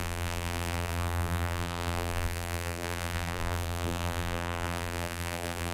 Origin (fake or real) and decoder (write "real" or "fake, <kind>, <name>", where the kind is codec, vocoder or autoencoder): fake, vocoder, BigVGAN v2